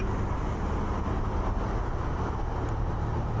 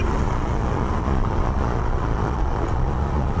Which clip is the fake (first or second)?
second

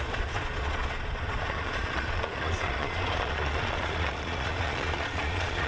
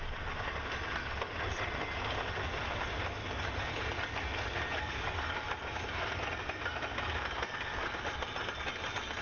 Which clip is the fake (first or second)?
first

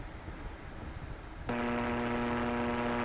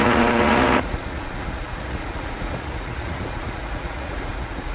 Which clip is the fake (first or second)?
second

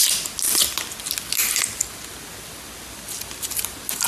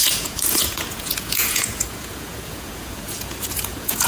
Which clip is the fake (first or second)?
second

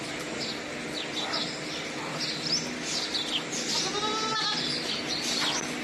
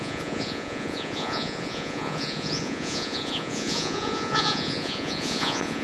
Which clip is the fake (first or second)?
second